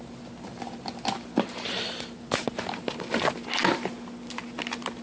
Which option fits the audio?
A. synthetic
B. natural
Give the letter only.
B